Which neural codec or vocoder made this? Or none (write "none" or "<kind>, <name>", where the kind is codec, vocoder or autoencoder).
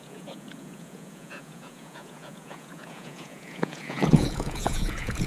vocoder, Vocos